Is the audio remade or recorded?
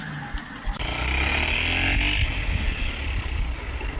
recorded